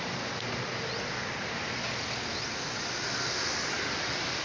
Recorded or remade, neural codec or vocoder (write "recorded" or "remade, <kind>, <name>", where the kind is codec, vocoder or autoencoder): recorded